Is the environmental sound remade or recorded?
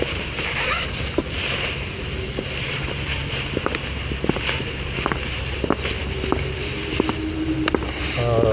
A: recorded